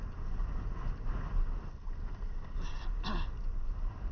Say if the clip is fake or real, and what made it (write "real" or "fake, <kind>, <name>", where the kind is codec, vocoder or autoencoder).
real